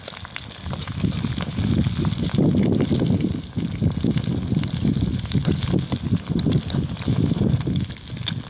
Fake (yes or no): no